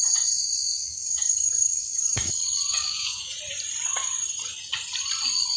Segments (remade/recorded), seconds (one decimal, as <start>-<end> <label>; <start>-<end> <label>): 0.0-0.8 recorded; 0.8-2.3 remade; 2.3-2.7 recorded; 2.7-3.3 remade; 3.3-5.6 recorded

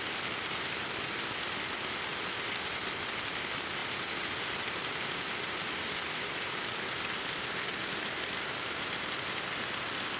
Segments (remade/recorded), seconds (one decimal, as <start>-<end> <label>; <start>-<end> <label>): 0.0-10.2 recorded

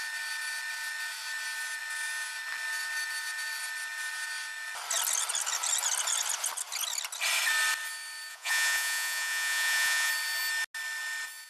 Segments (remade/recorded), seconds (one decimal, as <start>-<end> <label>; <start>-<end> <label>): 0.0-8.3 recorded; 8.3-10.1 remade; 10.1-11.5 recorded

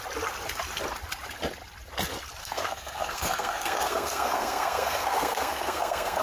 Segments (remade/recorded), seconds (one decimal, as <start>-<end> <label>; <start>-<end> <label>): 0.0-2.4 recorded; 2.4-6.2 remade

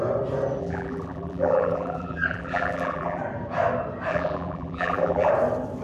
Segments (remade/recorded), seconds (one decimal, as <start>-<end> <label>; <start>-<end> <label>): 0.0-0.6 recorded; 0.6-3.2 remade; 3.2-4.1 recorded; 4.1-5.3 remade; 5.3-5.8 recorded

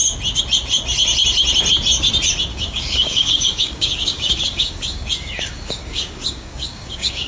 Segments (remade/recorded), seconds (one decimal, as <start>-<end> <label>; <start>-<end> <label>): 0.0-2.5 recorded; 2.5-7.3 remade

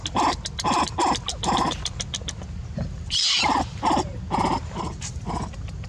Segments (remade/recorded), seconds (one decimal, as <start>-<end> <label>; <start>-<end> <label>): 0.0-1.3 recorded; 1.3-3.6 remade; 3.6-5.9 recorded

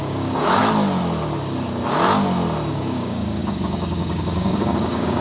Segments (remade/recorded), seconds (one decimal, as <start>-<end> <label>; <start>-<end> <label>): 0.0-0.6 remade; 0.6-2.7 recorded; 2.7-5.2 remade